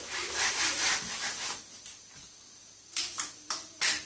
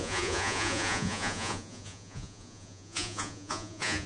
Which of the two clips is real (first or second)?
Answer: first